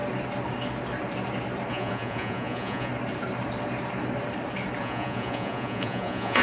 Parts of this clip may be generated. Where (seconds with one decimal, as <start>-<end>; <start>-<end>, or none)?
1.7-2.9; 4.8-6.4